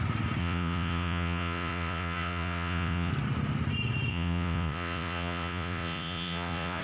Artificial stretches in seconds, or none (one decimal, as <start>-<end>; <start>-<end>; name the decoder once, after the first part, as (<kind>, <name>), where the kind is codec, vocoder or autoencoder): 0.4-3.1 (vocoder, Vocos); 4.1-6.8